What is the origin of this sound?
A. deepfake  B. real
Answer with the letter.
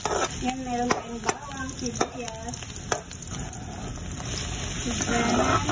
B